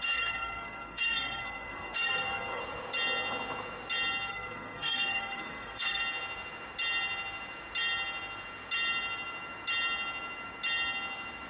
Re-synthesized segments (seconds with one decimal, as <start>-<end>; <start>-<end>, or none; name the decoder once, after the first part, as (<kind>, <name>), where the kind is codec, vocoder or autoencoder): 0.0-2.6 (codec, SNAC); 4.3-6.0